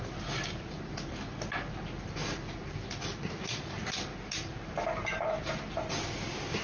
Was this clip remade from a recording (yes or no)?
no